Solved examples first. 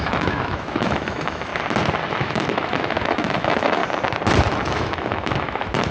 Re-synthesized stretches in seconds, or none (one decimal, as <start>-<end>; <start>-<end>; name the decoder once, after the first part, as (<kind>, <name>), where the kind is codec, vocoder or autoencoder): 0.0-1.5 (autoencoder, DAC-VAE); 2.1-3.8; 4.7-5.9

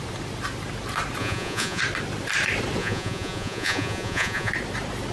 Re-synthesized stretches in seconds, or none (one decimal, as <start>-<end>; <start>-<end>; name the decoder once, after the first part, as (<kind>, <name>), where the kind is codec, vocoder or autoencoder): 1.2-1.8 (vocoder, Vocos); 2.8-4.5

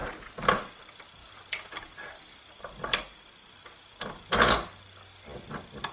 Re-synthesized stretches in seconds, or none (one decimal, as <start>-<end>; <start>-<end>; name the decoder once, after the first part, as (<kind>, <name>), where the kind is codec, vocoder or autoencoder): 1.2-4.5 (vocoder, BigVGAN v2)

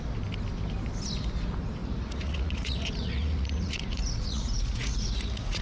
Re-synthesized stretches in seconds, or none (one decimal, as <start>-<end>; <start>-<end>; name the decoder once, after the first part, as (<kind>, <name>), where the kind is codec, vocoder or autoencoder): 1.8-5.6 (vocoder, Vocos)

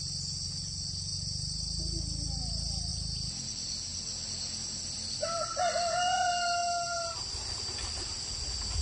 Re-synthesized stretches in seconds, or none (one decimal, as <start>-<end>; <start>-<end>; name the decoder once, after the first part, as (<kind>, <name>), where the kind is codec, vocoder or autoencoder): 2.9-3.5 (vocoder, BigVGAN v2); 3.9-5.6; 6.6-7.3

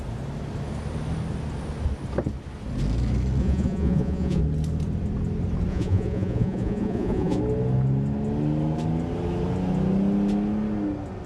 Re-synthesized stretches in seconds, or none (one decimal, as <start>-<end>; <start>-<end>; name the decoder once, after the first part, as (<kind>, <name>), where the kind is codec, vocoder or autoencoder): 3.4-4.4 (vocoder, Vocos); 5.7-7.4

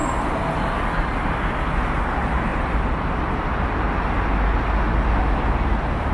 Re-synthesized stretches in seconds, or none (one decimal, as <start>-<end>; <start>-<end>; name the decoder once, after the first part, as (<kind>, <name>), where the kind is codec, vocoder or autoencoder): 2.5-3.1 (vocoder, BigVGAN v2)

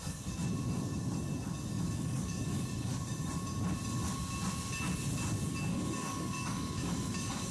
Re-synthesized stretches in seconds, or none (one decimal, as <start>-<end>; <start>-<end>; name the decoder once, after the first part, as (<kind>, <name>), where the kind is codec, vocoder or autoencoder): 0.0-0.4 (codec, DAC); 1.7-2.9; 5.5-7.5